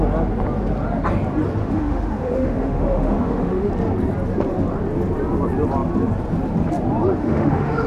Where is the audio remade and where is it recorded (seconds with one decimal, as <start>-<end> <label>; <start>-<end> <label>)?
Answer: 0.0-1.6 recorded; 1.6-3.7 remade; 3.7-7.2 recorded; 7.2-7.9 remade